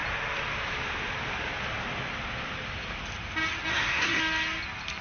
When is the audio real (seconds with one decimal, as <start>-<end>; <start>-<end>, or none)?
0.0-3.7; 4.2-5.0